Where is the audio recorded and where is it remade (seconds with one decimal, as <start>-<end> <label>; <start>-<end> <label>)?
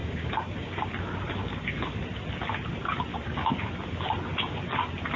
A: 0.0-0.9 remade; 0.9-1.4 recorded; 1.4-2.0 remade; 2.0-3.1 recorded; 3.1-3.7 remade; 3.7-5.2 recorded